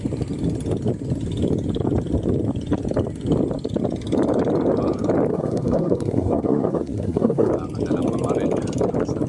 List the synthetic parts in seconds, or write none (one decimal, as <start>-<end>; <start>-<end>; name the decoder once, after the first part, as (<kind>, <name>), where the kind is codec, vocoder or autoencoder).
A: 5.3-7.5 (codec, SNAC)